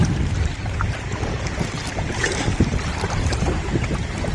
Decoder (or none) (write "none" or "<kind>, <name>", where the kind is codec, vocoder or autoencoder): none